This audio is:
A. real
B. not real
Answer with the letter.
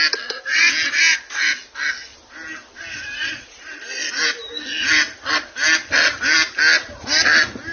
A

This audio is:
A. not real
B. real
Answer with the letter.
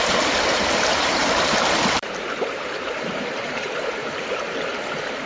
A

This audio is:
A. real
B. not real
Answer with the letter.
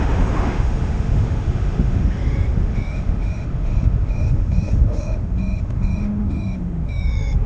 B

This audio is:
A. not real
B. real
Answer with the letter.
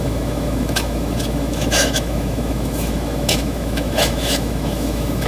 A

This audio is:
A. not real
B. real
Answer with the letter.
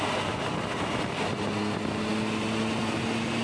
B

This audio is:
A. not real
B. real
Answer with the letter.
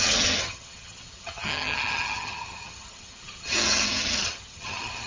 A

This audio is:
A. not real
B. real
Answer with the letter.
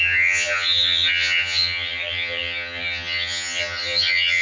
A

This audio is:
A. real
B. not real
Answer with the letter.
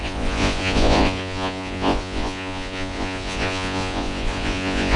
B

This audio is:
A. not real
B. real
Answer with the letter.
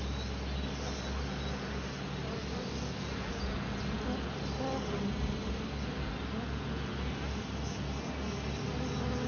B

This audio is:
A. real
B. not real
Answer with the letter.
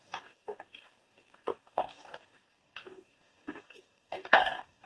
B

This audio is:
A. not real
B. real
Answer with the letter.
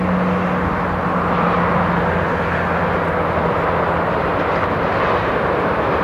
B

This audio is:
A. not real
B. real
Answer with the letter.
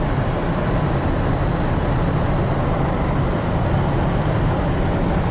B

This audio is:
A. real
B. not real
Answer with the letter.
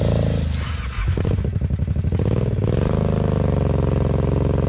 A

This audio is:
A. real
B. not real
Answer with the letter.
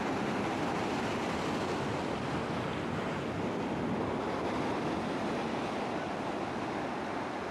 A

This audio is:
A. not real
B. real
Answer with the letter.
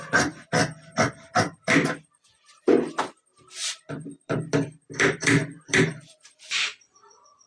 A